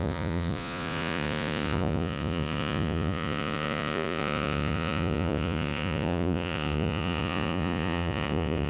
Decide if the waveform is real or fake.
fake